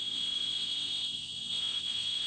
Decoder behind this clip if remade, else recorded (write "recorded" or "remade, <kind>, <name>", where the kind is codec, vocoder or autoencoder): remade, vocoder, WaveNeXt